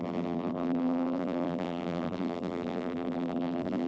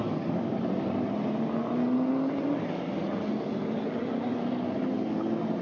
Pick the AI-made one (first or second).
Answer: first